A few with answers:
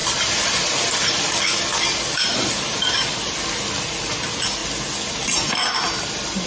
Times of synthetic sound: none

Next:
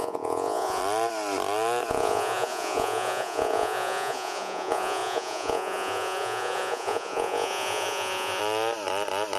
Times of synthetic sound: 0.0-0.8 (vocoder, Vocos); 1.9-8.4

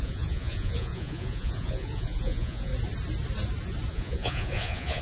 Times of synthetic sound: 0.0-2.7 (vocoder, Vocos); 3.9-5.0

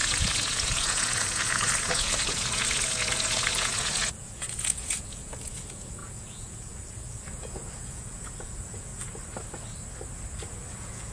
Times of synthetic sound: 0.0-8.9 (vocoder, Vocos); 10.7-11.1